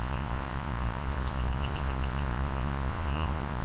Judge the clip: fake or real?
fake